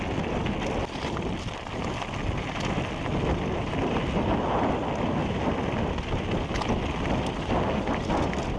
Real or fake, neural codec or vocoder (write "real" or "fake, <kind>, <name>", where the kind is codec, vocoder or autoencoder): real